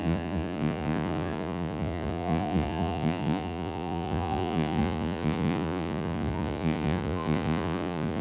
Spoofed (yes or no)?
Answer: yes